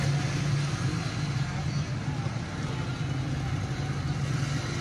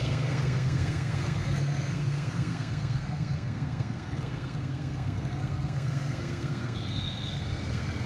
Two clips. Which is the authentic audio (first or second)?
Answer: first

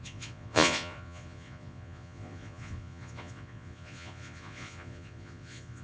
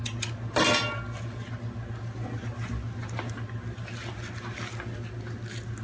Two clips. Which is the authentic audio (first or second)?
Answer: second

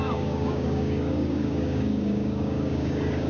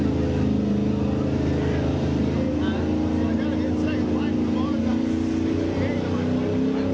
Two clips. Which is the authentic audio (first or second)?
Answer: second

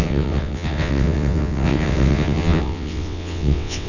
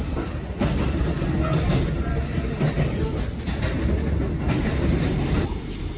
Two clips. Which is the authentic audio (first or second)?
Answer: second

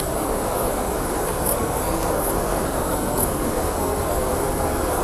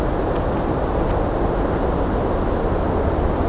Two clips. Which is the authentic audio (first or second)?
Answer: second